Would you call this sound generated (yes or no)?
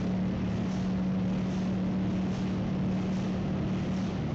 no